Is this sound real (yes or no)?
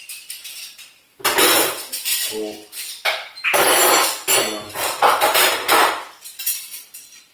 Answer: yes